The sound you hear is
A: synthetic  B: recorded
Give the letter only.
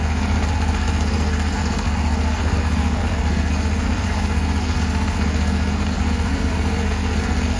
A